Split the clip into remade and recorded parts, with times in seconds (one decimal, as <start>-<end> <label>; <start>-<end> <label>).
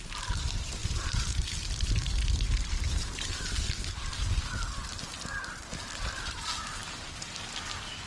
0.0-8.1 remade